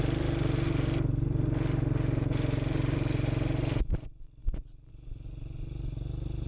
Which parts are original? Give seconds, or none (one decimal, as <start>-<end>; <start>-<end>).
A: 0.0-6.5